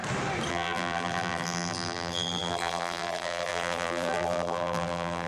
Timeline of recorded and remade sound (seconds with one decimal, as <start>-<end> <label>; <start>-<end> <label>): 0.0-0.5 recorded; 0.5-5.3 remade

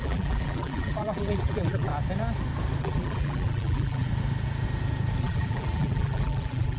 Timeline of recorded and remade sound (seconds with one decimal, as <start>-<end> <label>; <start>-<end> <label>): 0.0-1.9 remade; 1.9-2.8 recorded; 2.8-4.1 remade; 4.1-5.2 recorded; 5.2-6.8 remade